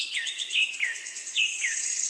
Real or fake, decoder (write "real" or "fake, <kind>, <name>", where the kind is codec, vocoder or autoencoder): fake, codec, DAC